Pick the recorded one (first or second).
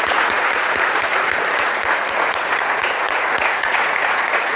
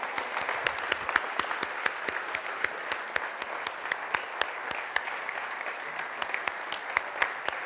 second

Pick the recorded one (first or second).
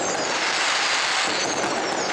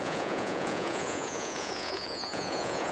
first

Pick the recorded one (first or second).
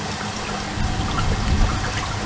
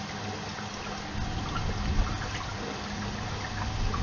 second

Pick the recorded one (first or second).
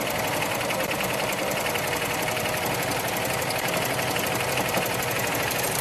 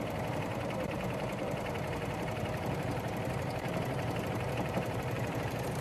first